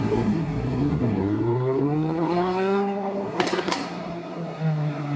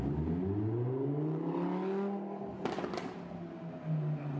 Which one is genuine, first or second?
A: second